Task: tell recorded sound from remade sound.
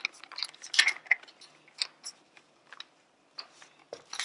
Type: recorded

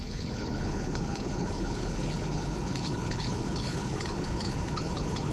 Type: remade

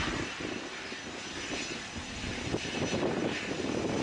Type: recorded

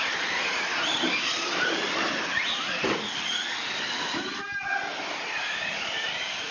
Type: recorded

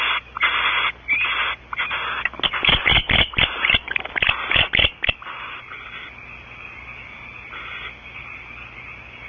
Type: recorded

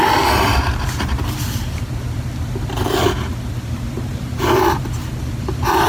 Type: recorded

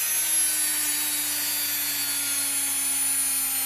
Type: recorded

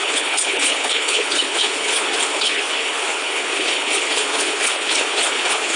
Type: remade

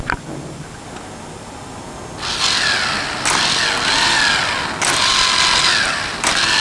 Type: recorded